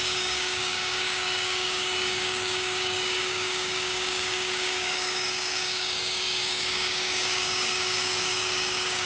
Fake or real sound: fake